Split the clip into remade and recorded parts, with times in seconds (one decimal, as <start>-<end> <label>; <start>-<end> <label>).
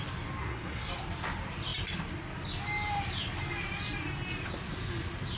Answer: 0.0-0.4 recorded; 0.4-0.9 remade; 0.9-5.4 recorded